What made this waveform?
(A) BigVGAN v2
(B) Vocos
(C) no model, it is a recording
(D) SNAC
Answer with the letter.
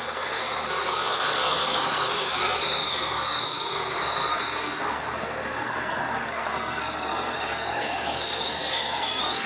D